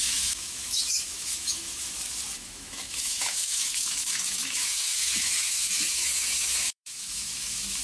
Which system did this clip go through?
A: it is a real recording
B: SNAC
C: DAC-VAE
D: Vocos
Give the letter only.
C